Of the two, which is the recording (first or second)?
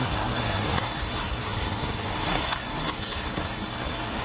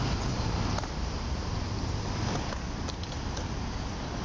second